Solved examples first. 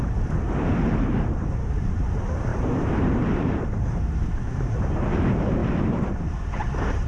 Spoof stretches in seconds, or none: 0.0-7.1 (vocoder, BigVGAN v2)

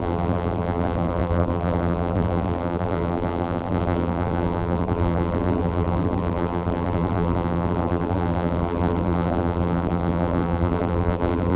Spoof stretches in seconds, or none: 0.0-11.6 (vocoder, BigVGAN v2)

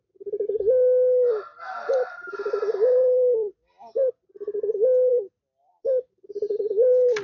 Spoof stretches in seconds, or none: 1.5-4.1 (vocoder, BigVGAN v2); 5.1-5.7

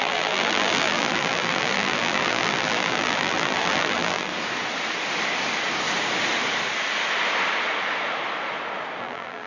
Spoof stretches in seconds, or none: 0.0-4.3 (vocoder, BigVGAN v2); 9.0-9.5